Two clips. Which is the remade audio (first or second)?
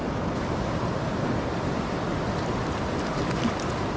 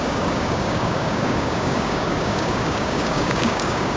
second